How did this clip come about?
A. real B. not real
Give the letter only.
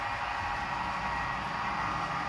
A